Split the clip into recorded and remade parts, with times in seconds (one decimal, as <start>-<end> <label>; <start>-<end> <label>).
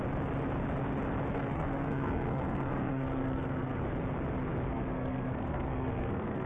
0.0-1.3 recorded; 1.3-3.8 remade; 3.8-4.7 recorded; 4.7-6.5 remade